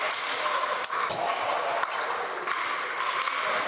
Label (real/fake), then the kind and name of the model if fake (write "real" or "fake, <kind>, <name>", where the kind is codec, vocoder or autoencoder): real